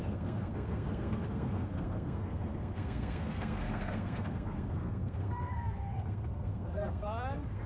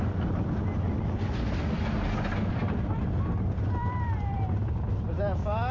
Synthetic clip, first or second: first